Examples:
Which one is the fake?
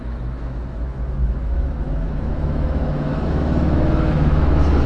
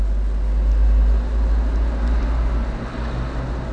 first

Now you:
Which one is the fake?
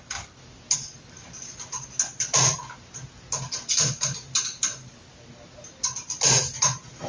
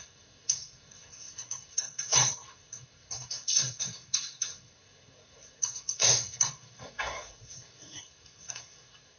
second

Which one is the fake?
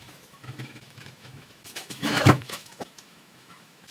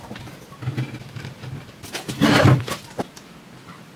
first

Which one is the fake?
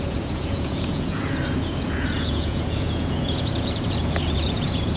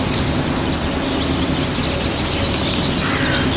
first